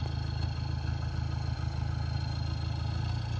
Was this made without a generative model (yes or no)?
yes